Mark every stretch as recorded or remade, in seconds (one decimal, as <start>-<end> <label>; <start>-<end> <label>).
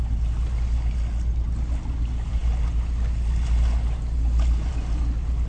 0.0-5.5 recorded